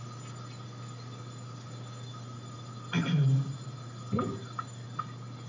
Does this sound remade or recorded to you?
recorded